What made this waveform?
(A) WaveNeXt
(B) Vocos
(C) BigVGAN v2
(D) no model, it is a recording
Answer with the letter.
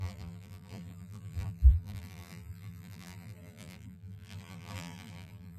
C